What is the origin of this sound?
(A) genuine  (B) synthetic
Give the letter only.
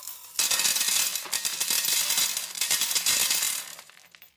A